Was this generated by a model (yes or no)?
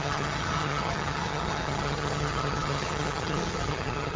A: yes